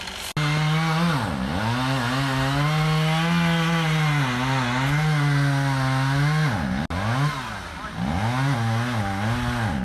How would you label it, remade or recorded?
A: recorded